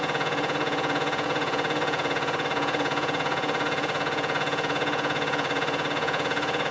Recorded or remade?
remade